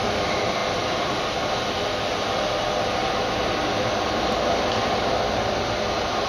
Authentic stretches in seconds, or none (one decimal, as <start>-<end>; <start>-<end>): 0.0-6.3